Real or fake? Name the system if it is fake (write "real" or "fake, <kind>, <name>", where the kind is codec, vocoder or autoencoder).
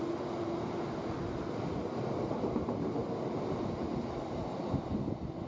real